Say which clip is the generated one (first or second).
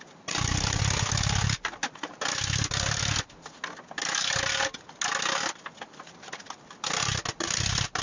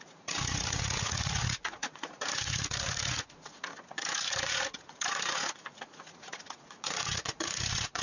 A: second